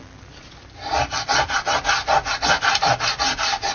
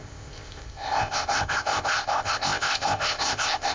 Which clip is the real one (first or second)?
first